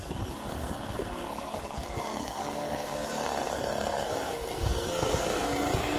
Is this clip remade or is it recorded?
remade